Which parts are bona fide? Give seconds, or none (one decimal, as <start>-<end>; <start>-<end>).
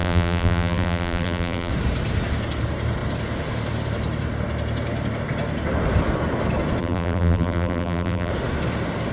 1.7-6.8; 8.3-9.1